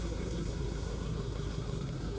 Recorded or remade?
remade